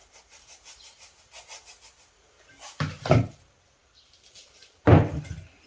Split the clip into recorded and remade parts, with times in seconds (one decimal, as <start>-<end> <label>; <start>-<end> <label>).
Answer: 0.0-5.7 recorded